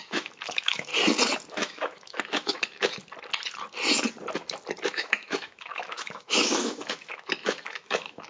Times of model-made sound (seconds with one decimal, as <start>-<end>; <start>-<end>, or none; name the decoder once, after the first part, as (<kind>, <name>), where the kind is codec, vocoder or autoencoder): 0.0-0.9 (autoencoder, DAC-VAE); 1.5-3.0; 4.9-8.3

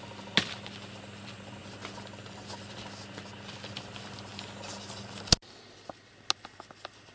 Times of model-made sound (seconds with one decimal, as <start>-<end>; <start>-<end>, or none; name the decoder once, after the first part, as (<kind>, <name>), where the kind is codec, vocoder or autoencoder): none

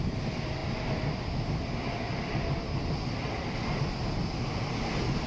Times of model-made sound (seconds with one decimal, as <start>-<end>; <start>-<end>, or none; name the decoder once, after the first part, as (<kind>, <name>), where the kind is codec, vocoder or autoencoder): none

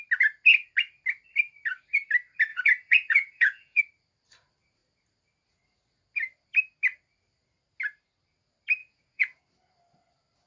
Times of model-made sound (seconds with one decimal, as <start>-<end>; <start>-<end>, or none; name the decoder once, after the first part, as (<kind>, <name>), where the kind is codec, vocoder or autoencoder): 2.5-3.8 (vocoder, Vocos); 8.8-9.4

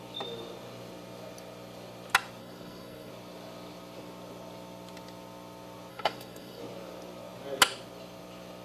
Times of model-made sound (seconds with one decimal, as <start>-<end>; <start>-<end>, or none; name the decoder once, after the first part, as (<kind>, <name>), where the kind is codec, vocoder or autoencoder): 2.4-3.1 (codec, SNAC); 5.9-6.6

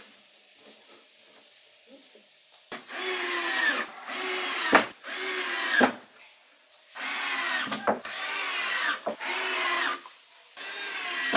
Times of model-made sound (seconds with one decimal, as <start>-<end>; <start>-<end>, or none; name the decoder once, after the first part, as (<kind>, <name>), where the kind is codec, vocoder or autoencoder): none

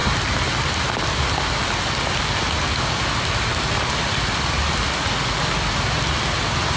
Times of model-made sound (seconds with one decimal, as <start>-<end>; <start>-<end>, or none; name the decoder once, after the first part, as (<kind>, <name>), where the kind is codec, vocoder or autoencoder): none

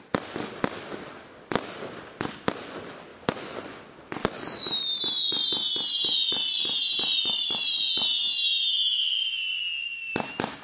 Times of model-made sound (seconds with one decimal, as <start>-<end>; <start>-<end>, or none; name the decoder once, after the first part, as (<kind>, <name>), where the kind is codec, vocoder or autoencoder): 3.1-3.8 (vocoder, Vocos); 9.0-9.6